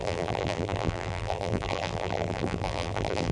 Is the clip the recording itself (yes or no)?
no